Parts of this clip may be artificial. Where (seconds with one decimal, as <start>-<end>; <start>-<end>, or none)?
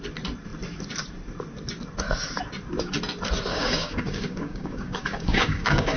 3.5-6.0